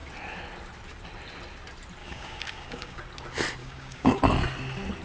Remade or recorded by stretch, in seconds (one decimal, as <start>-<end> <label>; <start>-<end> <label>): 0.0-2.0 recorded; 2.0-3.0 remade; 3.0-3.6 recorded; 3.6-4.2 remade; 4.2-5.0 recorded